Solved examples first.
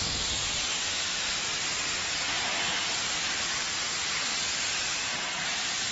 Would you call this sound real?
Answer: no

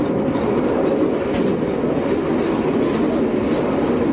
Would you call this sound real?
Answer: yes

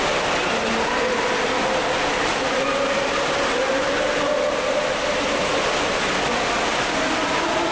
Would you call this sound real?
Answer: yes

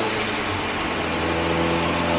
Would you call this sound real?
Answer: yes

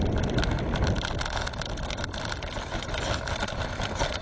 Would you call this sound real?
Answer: yes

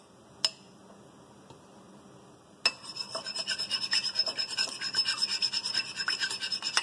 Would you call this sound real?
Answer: yes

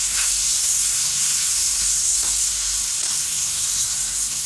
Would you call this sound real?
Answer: no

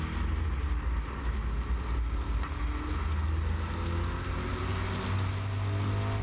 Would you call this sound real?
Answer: yes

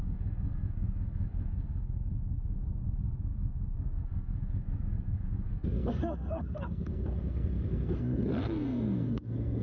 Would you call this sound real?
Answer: no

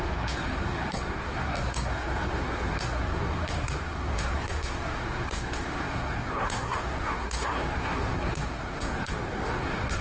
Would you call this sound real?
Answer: no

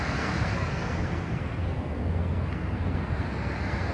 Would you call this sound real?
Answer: no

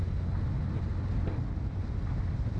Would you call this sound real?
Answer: yes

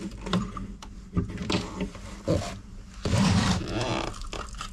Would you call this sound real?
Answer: no